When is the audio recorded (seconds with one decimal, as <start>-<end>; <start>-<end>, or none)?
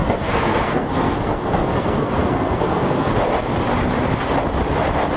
3.1-5.2